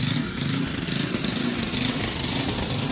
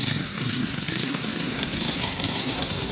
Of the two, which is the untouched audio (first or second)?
first